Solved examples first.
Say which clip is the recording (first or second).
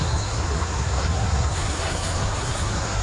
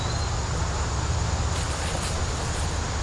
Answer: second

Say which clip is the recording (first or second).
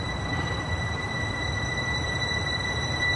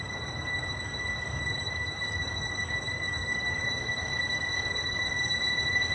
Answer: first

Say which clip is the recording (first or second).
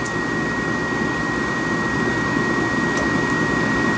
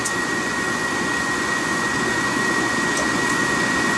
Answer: first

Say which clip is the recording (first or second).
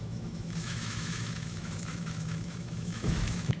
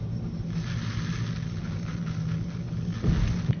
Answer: second